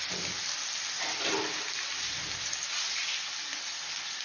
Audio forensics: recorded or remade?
recorded